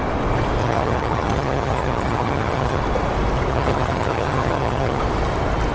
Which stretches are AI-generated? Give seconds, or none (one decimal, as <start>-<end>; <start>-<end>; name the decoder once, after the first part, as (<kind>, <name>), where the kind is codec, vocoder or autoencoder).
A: 0.6-2.8 (vocoder, HiFi-GAN); 3.5-5.0